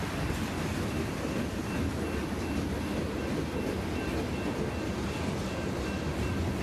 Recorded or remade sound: recorded